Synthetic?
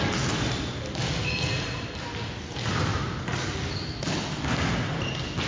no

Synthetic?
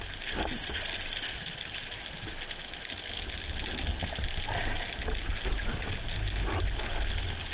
no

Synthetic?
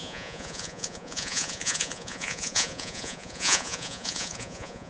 yes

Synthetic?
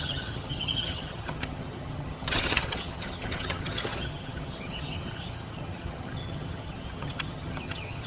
yes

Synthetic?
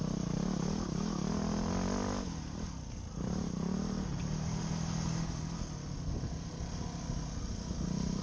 no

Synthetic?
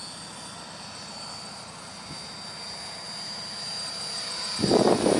no